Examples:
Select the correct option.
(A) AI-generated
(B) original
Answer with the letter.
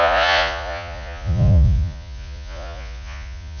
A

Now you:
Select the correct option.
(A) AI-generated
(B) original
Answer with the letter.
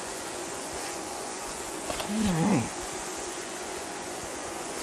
A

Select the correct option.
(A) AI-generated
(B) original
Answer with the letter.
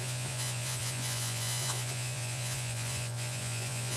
A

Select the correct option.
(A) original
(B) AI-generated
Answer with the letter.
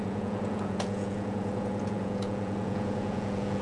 B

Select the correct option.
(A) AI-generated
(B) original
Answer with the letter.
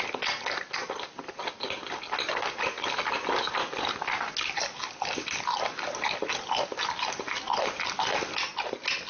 B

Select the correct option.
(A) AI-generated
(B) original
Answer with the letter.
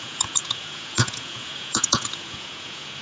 A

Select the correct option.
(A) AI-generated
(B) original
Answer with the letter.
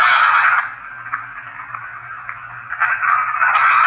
B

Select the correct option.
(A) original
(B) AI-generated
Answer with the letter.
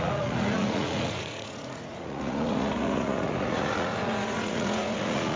B